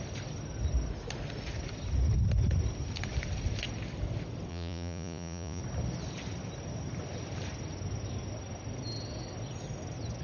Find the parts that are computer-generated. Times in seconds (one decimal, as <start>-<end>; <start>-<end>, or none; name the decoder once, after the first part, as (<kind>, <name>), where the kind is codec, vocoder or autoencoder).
4.5-5.6 (vocoder, Vocos)